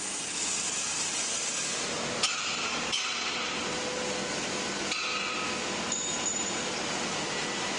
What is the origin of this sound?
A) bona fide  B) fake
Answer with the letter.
A